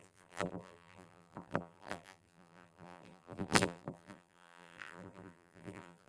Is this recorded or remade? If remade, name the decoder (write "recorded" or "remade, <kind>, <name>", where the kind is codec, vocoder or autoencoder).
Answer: remade, vocoder, BigVGAN v2